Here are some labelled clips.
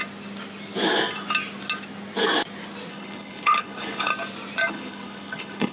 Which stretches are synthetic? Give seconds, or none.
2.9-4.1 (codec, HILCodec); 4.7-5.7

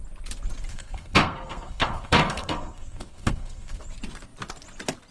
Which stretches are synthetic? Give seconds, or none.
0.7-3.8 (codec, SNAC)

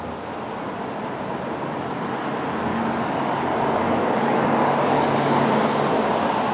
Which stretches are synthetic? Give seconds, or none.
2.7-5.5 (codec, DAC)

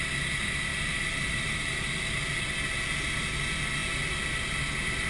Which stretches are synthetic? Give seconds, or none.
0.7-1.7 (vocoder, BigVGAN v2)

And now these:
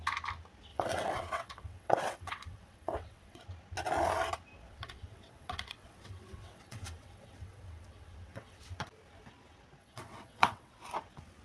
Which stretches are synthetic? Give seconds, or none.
0.7-3.4 (vocoder, WaveNeXt); 4.7-8.7; 9.8-10.8

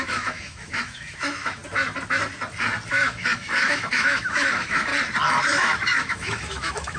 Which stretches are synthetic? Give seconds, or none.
0.0-1.6 (autoencoder, DAC-VAE); 2.9-4.9; 5.4-7.0

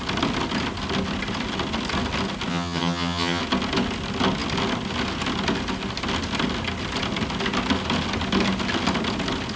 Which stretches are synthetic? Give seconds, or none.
2.5-3.4 (vocoder, HiFi-GAN)